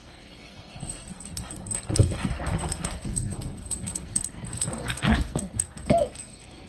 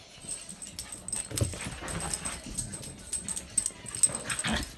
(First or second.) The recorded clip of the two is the second